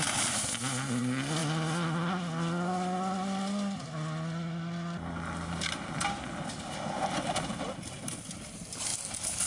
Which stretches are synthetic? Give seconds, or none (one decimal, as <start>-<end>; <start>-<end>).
none